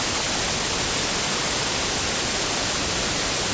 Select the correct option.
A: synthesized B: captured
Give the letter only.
B